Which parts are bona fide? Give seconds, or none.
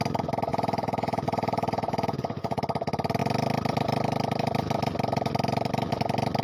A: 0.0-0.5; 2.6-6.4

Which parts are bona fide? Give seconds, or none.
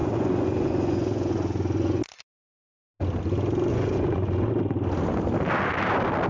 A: 2.0-3.7; 4.5-6.3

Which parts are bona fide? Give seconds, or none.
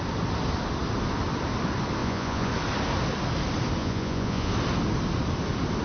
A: 0.0-2.0; 2.5-3.8; 4.5-5.8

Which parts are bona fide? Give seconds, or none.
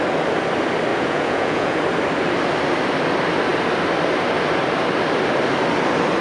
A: 0.0-0.9; 1.8-6.2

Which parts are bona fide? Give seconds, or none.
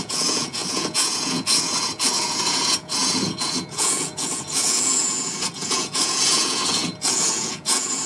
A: none